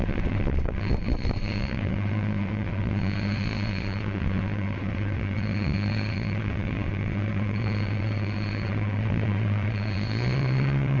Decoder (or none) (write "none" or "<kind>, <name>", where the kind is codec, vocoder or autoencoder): vocoder, WaveNeXt